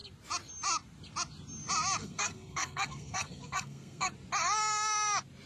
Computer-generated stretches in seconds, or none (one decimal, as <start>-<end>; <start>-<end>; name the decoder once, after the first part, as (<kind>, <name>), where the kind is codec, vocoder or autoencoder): 2.0-4.1 (codec, SNAC)